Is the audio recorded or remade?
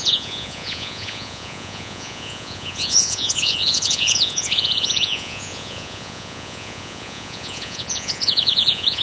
remade